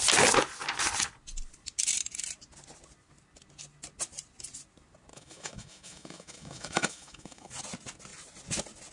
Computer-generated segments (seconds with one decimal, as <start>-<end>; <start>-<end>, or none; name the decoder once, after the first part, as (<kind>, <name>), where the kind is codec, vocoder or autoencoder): 5.1-7.5 (autoencoder, DAC-VAE)